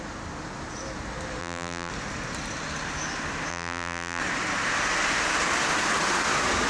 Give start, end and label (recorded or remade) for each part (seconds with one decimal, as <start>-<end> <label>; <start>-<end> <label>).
0.0-1.4 recorded; 1.4-1.9 remade; 1.9-3.5 recorded; 3.5-4.2 remade; 4.2-6.7 recorded

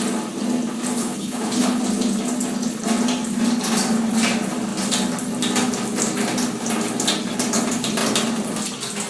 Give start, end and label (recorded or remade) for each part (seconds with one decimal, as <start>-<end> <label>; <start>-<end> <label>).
0.0-1.0 recorded; 1.0-1.8 remade; 1.8-9.1 recorded

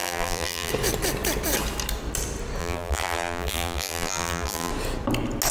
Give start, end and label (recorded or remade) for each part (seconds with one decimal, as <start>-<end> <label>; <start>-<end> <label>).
0.0-0.7 remade; 0.7-2.6 recorded; 2.6-4.7 remade; 4.7-5.5 recorded

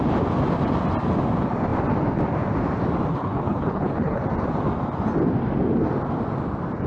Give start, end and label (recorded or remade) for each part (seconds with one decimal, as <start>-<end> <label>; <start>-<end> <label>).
0.0-3.1 recorded; 3.1-4.2 remade; 4.2-6.9 recorded

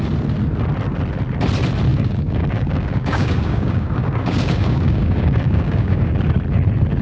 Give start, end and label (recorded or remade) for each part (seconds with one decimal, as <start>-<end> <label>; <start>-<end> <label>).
0.0-1.9 recorded; 1.9-6.1 remade; 6.1-7.0 recorded

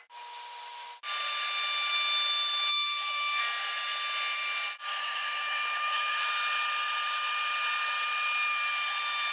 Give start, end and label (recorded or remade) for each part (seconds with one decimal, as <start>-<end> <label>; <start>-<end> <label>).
0.0-2.7 recorded; 2.7-3.4 remade; 3.4-4.9 recorded; 4.9-6.3 remade; 6.3-9.3 recorded

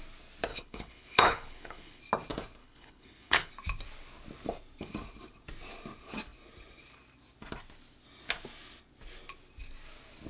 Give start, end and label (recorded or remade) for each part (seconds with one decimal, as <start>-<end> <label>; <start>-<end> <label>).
0.0-0.5 recorded; 0.5-2.0 remade; 2.0-2.6 recorded; 2.6-3.5 remade; 3.5-10.3 recorded

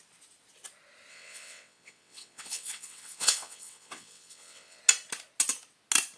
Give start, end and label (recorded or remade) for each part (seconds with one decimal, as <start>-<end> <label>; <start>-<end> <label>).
0.0-1.1 recorded; 1.1-4.8 remade; 4.8-6.2 recorded